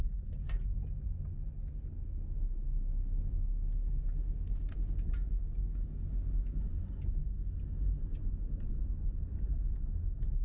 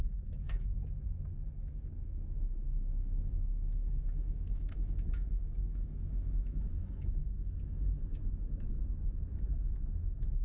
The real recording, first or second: first